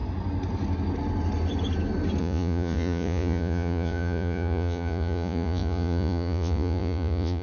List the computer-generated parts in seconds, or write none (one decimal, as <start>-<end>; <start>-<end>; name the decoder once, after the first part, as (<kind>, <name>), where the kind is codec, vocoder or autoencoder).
2.2-7.4 (vocoder, Vocos)